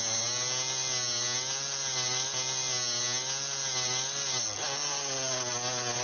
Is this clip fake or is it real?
real